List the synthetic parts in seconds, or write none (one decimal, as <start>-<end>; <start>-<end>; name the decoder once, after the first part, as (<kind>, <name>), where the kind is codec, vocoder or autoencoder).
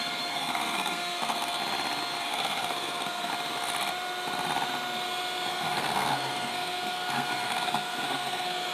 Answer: 0.0-1.6 (codec, SNAC); 2.2-3.3; 5.5-8.7